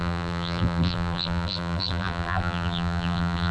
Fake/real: fake